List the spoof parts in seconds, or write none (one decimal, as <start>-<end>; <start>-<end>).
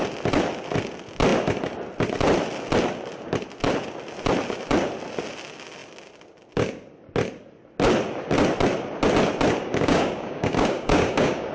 9.6-11.5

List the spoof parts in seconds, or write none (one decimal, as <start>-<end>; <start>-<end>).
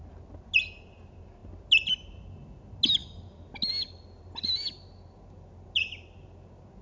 none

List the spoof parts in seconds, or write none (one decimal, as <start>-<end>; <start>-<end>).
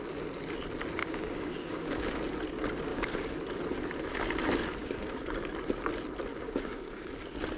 1.0-2.2; 2.9-3.4; 4.8-5.5; 6.3-7.1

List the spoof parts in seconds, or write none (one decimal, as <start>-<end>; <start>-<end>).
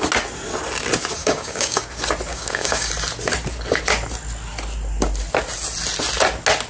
1.2-1.9; 2.3-2.9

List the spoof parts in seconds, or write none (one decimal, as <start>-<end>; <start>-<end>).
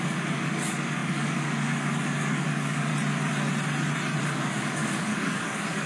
0.0-2.9; 4.2-5.9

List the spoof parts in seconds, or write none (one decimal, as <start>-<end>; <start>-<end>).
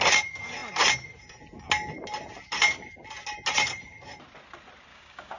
4.9-5.4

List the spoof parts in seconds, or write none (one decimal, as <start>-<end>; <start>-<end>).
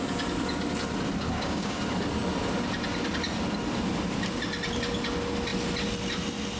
1.3-1.8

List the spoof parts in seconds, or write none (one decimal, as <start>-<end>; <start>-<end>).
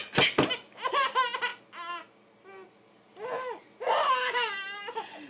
none